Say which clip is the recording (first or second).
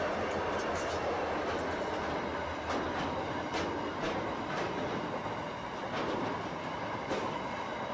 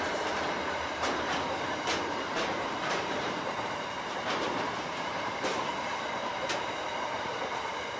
first